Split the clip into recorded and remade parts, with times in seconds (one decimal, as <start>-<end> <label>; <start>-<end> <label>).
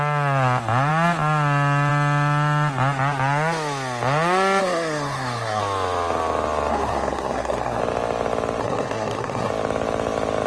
0.0-4.6 recorded; 4.6-5.6 remade; 5.6-6.7 recorded; 6.7-7.8 remade; 7.8-8.6 recorded; 8.6-9.5 remade; 9.5-10.5 recorded